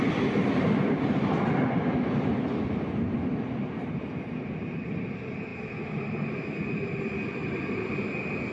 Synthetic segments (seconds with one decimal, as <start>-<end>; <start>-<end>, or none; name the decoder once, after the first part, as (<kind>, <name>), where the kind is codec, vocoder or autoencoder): none